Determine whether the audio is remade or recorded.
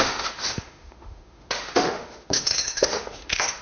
remade